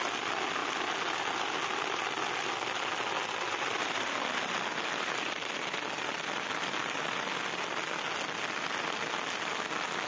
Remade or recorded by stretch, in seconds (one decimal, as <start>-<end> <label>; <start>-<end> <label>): 0.0-10.1 recorded